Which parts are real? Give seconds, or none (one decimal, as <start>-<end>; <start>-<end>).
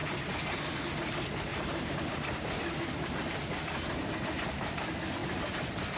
0.0-1.5; 2.6-5.2